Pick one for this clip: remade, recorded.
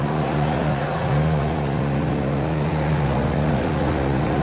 remade